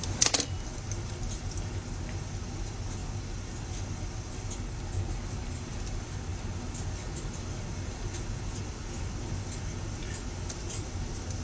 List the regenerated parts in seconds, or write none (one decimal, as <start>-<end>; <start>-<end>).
none

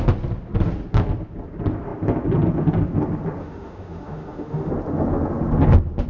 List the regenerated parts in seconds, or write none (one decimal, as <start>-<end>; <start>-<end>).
3.4-4.7